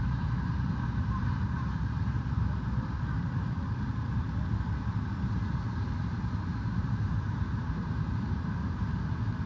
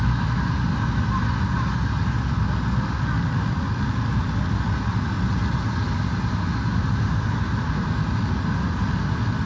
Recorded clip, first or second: second